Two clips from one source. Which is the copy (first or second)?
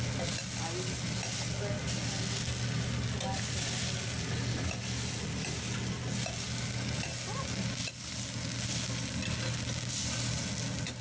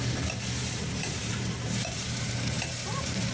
second